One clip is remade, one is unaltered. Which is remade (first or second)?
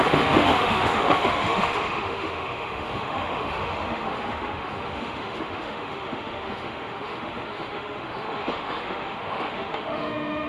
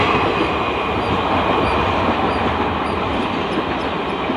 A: first